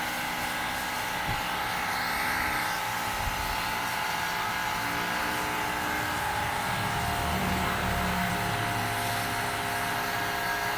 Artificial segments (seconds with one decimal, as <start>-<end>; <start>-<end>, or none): 7.4-8.3